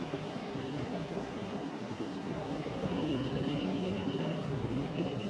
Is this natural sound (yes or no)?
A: no